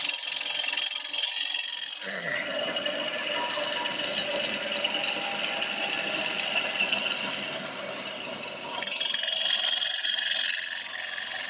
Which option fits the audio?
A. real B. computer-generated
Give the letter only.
A